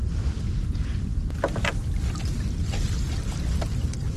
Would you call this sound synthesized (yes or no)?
no